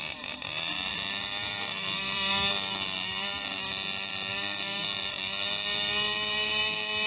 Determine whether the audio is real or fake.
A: fake